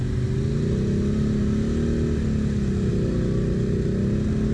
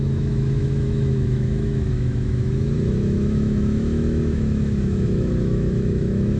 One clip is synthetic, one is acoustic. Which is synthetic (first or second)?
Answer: second